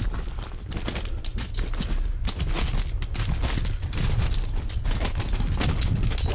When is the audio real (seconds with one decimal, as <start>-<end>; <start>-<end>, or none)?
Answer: 0.0-6.3